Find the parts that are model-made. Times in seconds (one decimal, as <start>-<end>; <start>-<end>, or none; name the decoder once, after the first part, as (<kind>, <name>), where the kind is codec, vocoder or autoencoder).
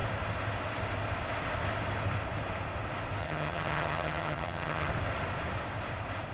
3.2-4.9 (vocoder, HiFi-GAN)